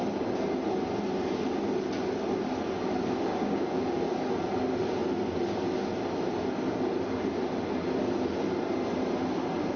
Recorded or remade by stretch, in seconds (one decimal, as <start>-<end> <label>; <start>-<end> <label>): 0.0-3.3 recorded; 3.3-4.2 remade; 4.2-9.8 recorded